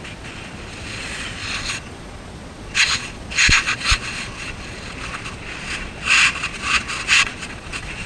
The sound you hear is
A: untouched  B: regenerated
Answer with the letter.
B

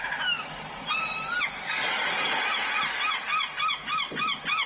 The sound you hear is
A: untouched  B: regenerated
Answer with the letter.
A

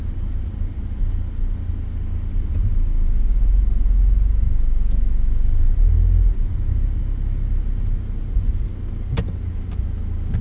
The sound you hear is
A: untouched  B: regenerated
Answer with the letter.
A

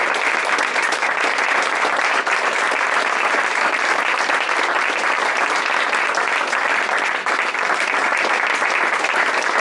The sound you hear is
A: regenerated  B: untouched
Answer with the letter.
B